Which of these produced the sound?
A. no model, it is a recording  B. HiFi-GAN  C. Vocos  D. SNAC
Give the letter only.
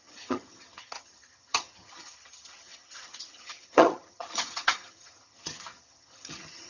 B